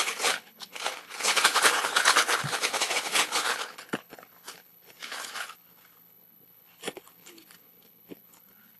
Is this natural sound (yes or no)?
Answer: no